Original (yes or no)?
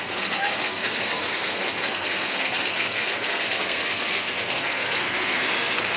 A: no